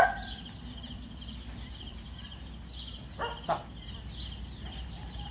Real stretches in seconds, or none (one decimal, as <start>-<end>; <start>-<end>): 0.0-5.3